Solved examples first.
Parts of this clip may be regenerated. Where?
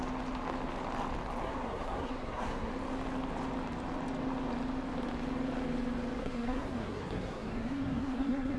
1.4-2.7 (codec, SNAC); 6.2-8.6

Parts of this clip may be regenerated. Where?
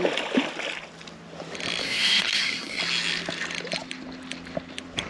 1.8-2.8 (codec, SNAC)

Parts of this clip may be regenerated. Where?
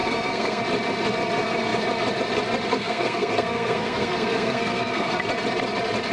0.0-0.6 (codec, SNAC); 2.7-5.1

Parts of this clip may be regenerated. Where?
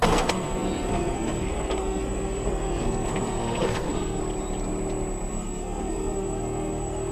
0.0-4.2 (codec, SNAC); 5.3-7.1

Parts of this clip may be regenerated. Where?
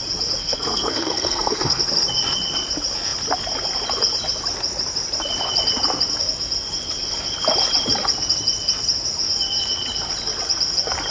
0.4-1.8 (codec, SNAC)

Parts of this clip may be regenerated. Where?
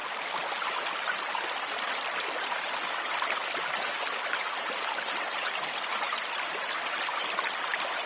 none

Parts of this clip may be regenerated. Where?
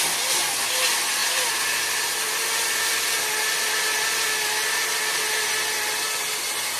none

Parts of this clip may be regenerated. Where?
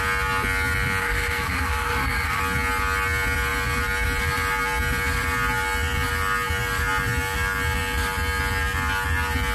1.0-2.4 (codec, SNAC)